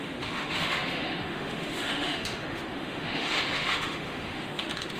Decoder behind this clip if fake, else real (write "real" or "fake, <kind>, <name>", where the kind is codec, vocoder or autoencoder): fake, autoencoder, DAC-VAE